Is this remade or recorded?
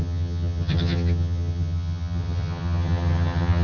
remade